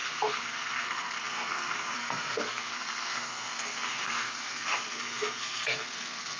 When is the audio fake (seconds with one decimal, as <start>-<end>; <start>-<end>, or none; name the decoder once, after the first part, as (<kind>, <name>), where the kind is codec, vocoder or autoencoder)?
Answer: 0.0-6.4 (codec, SNAC)